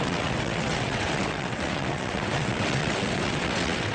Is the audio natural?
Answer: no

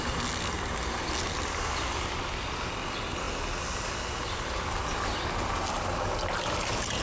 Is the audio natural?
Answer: yes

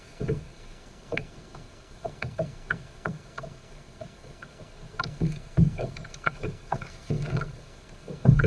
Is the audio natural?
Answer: no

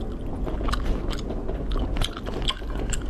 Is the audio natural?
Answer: yes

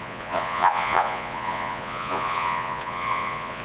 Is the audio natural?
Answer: no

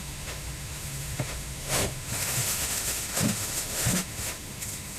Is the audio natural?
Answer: no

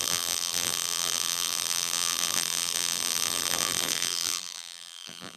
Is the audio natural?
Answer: no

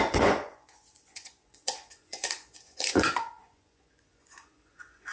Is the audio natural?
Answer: no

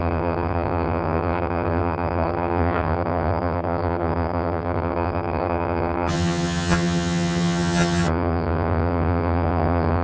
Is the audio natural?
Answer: no